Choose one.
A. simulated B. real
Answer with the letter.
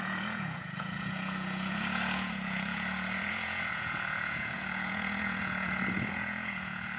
A